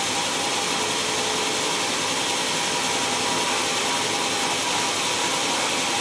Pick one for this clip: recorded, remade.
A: recorded